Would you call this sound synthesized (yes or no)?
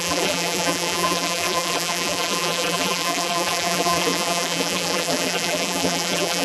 yes